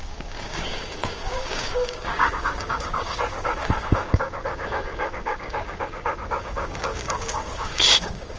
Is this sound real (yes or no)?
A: no